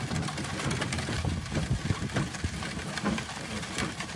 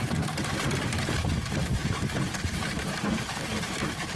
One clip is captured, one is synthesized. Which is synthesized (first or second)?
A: second